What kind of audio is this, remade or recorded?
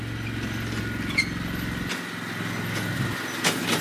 recorded